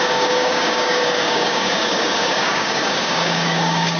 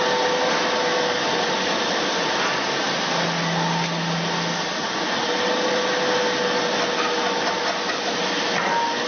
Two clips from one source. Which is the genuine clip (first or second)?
second